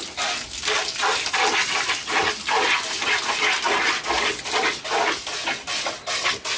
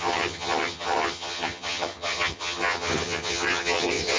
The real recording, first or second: first